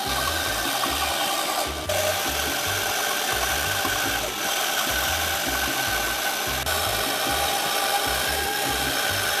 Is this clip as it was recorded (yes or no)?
yes